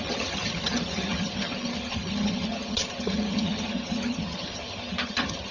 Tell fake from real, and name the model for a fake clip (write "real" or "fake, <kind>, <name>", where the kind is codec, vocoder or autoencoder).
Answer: fake, vocoder, HiFi-GAN